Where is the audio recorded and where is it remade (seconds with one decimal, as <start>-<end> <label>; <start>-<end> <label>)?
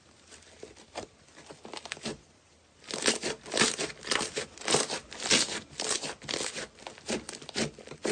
0.0-8.1 recorded